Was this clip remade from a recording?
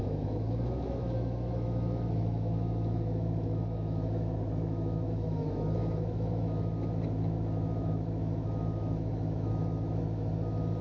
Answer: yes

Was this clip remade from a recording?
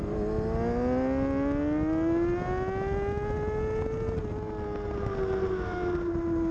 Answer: no